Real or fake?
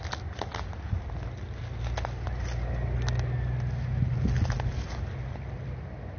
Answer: real